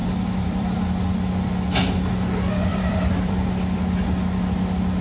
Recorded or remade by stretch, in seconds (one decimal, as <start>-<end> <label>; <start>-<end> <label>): 0.0-1.5 remade; 1.5-2.7 recorded; 2.7-3.5 remade; 3.5-5.0 recorded